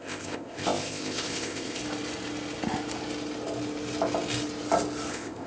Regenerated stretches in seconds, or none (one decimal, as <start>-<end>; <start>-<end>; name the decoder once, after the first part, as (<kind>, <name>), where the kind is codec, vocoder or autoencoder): 0.0-1.8 (codec, ZipCodec); 5.1-5.5